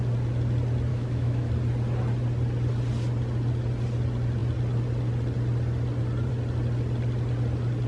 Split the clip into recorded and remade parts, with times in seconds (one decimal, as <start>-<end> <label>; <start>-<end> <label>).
0.0-0.9 recorded; 0.9-1.5 remade; 1.5-7.9 recorded